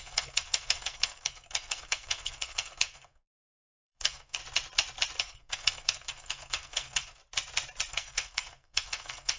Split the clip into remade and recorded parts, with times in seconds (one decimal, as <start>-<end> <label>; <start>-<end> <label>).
0.0-4.4 remade; 4.4-5.2 recorded; 5.2-7.2 remade; 7.2-7.9 recorded; 7.9-9.4 remade